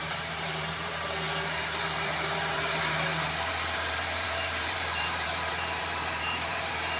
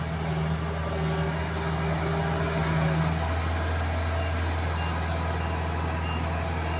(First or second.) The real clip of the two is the second